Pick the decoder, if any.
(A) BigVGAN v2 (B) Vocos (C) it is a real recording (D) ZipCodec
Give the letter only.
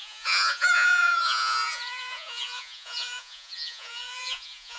B